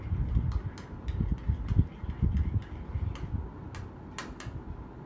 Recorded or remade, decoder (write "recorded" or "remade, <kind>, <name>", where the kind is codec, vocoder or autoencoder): recorded